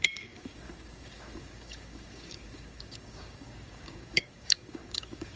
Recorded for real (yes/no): no